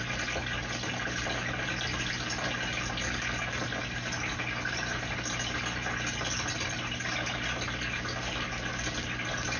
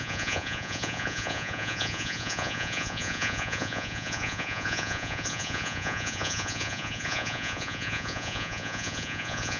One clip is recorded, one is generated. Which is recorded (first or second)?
first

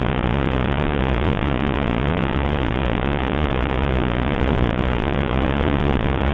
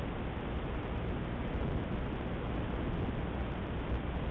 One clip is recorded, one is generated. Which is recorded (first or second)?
second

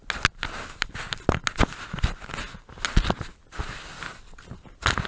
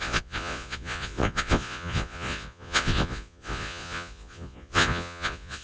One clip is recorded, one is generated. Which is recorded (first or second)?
first